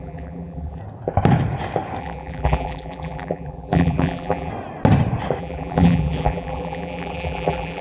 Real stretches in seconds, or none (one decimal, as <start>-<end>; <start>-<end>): 0.8-2.0; 4.5-5.4